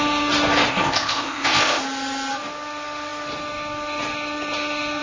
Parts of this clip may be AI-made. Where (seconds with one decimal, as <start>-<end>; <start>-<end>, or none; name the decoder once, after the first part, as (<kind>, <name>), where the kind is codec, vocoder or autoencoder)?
0.7-1.8 (codec, ZipCodec)